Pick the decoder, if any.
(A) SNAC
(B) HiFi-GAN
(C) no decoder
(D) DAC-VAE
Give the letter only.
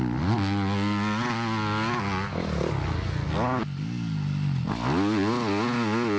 C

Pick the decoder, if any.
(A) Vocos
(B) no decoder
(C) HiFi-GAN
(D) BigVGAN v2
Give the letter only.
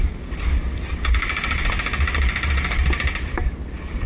B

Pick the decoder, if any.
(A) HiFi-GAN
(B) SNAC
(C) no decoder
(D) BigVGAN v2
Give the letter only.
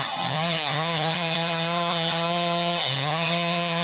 A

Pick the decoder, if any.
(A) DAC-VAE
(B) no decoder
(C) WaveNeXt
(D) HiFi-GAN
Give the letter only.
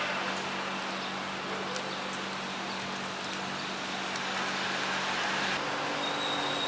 B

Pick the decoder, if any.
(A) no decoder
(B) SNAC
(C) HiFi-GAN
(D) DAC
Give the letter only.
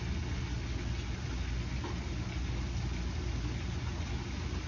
A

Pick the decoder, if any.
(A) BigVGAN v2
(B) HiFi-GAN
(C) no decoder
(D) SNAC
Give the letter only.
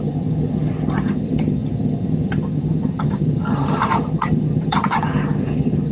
B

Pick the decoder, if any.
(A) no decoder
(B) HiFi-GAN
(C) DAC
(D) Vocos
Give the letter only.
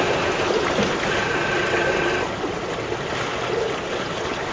A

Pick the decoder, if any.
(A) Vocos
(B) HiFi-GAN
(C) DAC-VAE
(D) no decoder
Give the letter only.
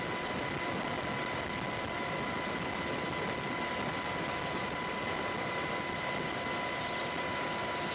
D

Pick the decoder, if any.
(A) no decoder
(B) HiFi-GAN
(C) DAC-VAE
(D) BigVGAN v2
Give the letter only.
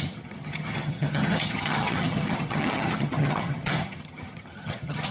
B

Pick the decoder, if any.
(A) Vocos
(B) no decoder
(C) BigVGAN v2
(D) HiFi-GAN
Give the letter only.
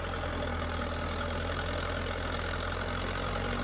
B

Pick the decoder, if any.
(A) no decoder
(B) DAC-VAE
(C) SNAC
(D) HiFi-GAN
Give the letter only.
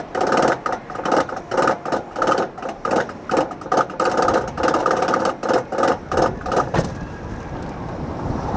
A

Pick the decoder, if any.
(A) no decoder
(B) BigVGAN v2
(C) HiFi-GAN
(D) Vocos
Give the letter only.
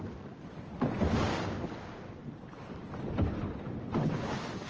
A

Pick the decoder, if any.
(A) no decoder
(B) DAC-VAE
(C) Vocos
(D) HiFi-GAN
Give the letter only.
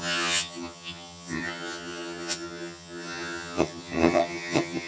D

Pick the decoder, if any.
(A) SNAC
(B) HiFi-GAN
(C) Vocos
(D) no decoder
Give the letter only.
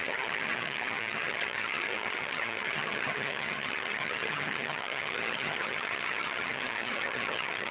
B